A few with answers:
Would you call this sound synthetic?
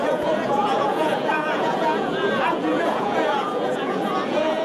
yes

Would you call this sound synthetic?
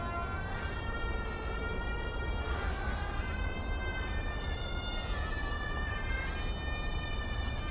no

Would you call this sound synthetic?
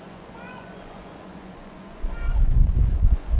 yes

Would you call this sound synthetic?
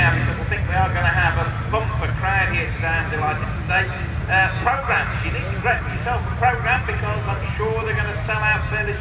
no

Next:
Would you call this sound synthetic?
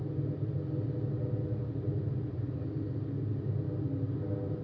no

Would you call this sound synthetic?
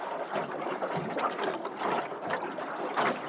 no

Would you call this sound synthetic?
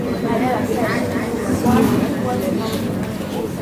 no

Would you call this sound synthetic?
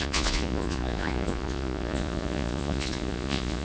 yes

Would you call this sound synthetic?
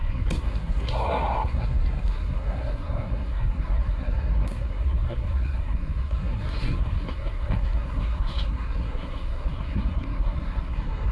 yes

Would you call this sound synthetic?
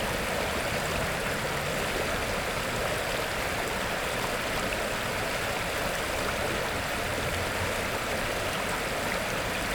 no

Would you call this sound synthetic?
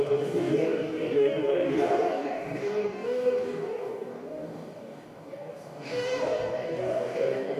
yes